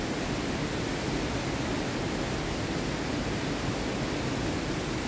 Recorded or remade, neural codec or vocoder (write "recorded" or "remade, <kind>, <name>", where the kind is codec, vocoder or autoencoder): recorded